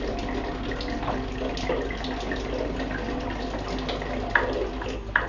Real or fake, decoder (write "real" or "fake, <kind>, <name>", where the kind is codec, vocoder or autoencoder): real